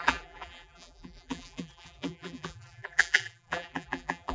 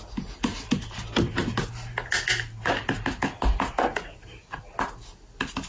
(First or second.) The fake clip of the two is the first